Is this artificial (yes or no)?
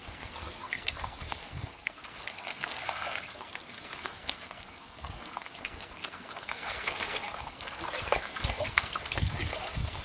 yes